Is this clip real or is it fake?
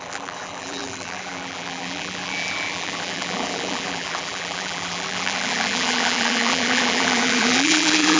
fake